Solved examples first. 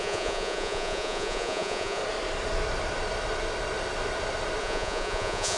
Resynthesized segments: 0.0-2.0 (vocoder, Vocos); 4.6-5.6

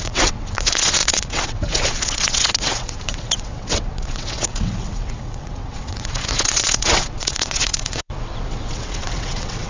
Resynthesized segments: 0.0-9.7 (vocoder, WaveNeXt)

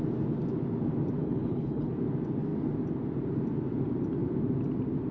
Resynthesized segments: 1.2-1.9 (codec, HILCodec)

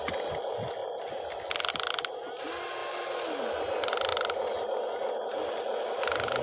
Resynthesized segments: none

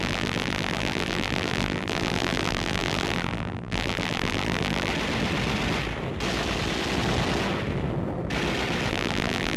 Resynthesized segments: 0.0-4.9 (vocoder, BigVGAN v2); 8.9-9.6